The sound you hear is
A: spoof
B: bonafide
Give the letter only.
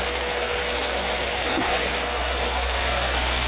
A